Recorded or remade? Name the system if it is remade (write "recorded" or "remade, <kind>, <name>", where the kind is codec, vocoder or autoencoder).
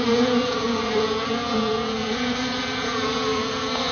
remade, vocoder, Vocos